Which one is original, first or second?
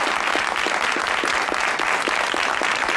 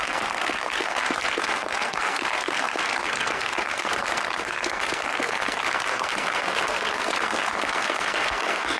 first